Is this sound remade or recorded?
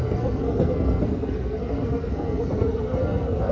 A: remade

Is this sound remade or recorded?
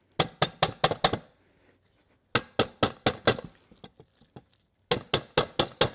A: recorded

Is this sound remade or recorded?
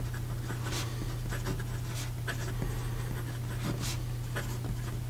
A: recorded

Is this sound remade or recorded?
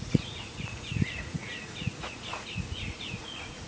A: remade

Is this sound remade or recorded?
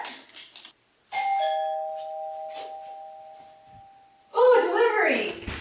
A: recorded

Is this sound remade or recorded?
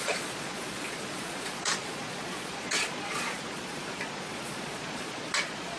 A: remade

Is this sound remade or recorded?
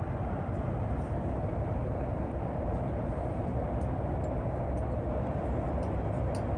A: recorded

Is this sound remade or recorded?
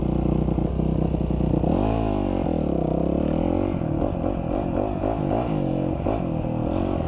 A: recorded